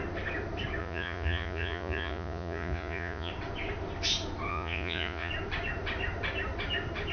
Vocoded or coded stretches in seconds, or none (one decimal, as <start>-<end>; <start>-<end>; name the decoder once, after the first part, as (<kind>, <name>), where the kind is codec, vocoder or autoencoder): 0.8-3.3 (vocoder, Vocos); 4.5-5.3